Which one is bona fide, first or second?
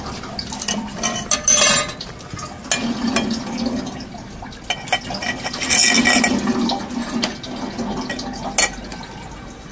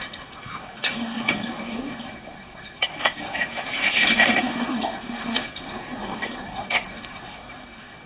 first